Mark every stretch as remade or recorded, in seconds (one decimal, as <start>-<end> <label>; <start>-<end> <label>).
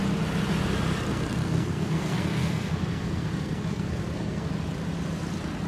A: 0.0-1.1 recorded; 1.1-4.5 remade; 4.5-5.7 recorded